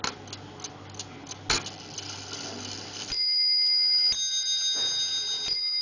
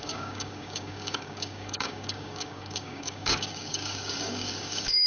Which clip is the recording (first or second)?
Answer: first